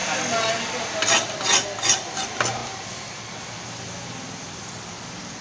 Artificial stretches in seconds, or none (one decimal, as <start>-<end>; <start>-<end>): none

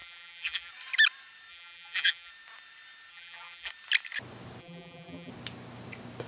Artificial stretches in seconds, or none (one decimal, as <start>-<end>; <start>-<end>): 0.0-0.7; 1.5-2.3; 3.1-3.7; 4.6-5.3

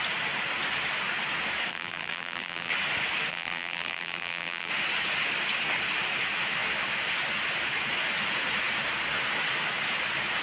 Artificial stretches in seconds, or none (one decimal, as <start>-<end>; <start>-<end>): 1.7-2.7; 3.3-4.7

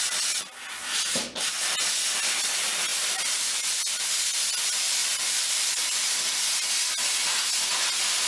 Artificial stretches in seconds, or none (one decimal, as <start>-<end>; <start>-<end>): 5.0-6.7